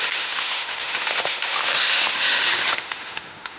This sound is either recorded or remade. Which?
remade